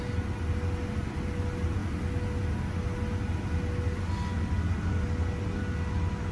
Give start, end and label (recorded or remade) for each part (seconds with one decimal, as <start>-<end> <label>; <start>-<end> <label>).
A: 0.0-6.3 recorded